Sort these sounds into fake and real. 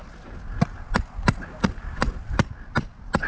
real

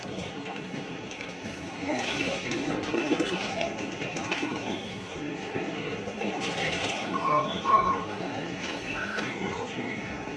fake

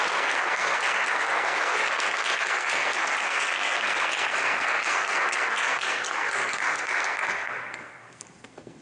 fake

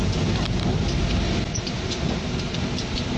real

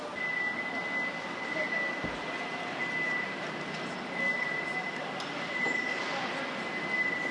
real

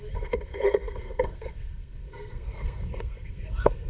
fake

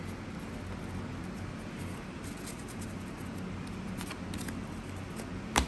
real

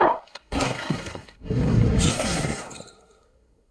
fake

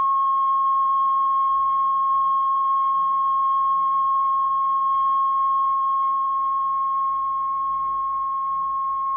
fake